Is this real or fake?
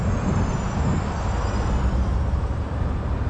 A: real